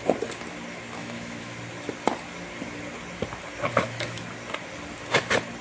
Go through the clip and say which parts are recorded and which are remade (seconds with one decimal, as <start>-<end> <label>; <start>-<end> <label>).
0.0-1.0 recorded; 1.0-1.6 remade; 1.6-3.7 recorded; 3.7-4.2 remade; 4.2-5.6 recorded